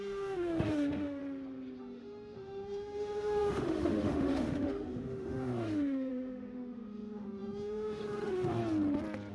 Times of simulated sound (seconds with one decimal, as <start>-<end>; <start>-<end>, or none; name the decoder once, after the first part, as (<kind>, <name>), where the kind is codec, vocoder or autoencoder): 0.0-1.2 (autoencoder, DAC-VAE); 1.8-8.6

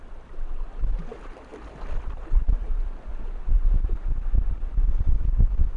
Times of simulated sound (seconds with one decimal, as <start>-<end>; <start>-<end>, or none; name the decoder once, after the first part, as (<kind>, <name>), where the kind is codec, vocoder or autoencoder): none